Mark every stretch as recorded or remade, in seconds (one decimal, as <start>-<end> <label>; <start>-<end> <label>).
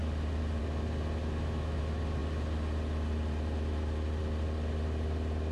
0.0-1.2 recorded; 1.2-1.8 remade; 1.8-5.5 recorded